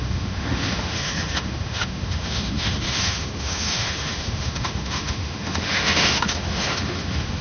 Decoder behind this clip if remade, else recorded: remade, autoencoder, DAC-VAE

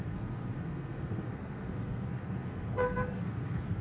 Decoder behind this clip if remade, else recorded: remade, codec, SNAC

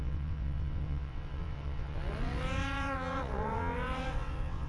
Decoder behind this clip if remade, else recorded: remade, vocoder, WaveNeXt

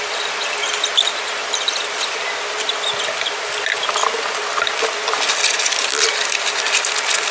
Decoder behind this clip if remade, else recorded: recorded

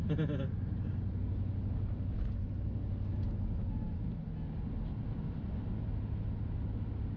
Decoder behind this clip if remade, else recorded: recorded